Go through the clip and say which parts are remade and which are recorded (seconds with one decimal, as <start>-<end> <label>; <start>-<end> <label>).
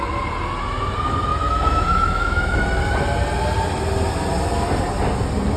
0.0-1.3 recorded; 1.3-2.8 remade; 2.8-5.6 recorded